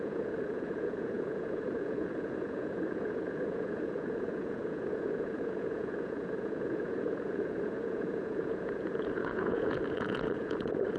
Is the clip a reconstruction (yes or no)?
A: yes